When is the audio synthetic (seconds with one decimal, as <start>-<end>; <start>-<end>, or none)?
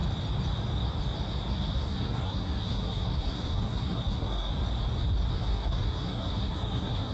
1.5-4.5; 5.3-7.1